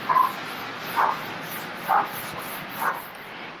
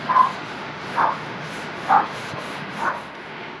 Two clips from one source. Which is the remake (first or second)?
second